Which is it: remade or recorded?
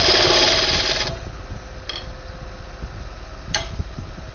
recorded